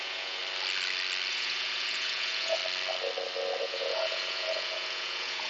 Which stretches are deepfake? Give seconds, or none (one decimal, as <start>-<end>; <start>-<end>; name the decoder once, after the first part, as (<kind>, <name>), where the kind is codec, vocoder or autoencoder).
0.0-0.4 (vocoder, Vocos); 1.3-2.6; 3.6-5.5